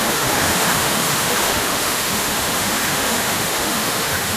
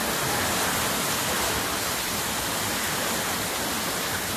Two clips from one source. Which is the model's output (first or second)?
first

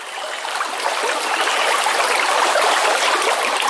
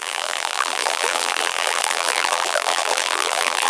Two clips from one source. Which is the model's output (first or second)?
second